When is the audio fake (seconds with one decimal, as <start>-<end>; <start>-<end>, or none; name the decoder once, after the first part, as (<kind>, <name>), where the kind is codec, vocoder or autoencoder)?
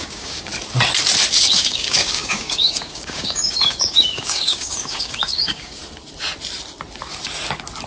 0.0-0.5 (codec, DAC); 1.3-5.8